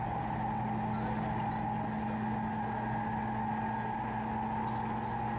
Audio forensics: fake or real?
real